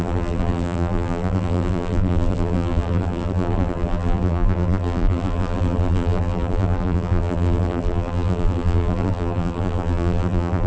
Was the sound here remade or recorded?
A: remade